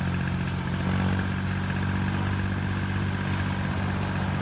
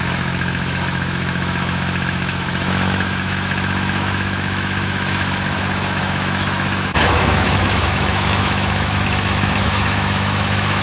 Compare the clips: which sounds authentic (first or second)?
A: first